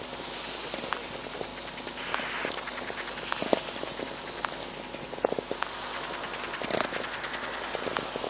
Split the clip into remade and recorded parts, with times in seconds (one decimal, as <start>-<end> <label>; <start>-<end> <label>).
0.0-8.3 recorded